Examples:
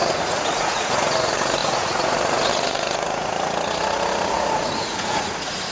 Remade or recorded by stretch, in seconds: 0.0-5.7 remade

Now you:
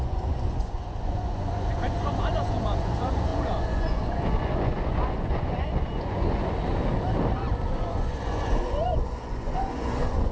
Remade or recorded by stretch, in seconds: 0.0-6.4 remade; 6.4-7.7 recorded; 7.7-10.3 remade

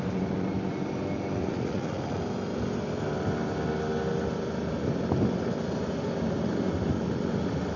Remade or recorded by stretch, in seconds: 0.0-1.4 recorded; 1.4-2.2 remade; 2.2-7.8 recorded

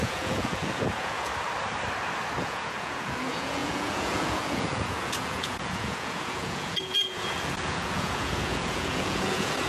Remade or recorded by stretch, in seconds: 0.0-1.3 remade; 1.3-2.4 recorded; 2.4-9.7 remade

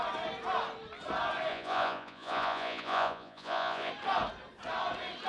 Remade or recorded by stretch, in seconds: 0.0-1.5 recorded; 1.5-3.9 remade; 3.9-5.3 recorded

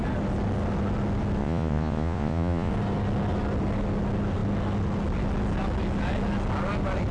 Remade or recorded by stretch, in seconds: 0.0-1.4 recorded; 1.4-2.7 remade; 2.7-7.1 recorded

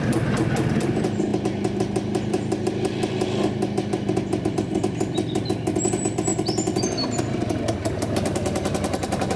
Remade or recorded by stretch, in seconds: 0.0-9.4 recorded

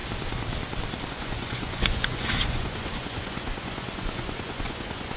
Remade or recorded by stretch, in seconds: 0.0-1.1 recorded; 1.1-5.2 remade